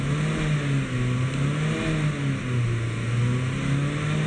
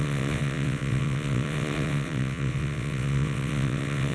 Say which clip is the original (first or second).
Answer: first